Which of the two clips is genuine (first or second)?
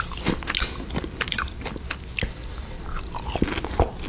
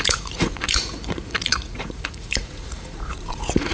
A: first